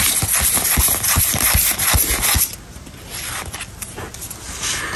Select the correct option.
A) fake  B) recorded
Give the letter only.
B